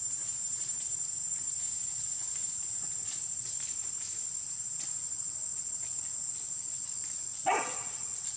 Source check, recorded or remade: recorded